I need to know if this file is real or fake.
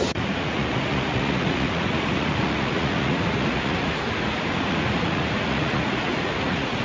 fake